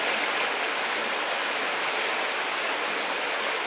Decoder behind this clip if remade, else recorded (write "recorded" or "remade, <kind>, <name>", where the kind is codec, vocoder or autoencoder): recorded